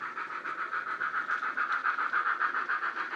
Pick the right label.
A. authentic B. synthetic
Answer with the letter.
A